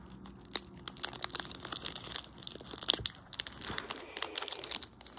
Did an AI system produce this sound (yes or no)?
no